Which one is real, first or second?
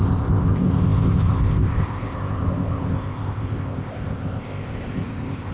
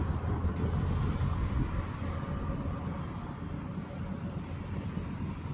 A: second